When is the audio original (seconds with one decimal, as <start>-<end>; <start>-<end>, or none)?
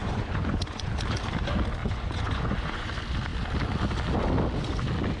0.9-1.8; 2.9-5.2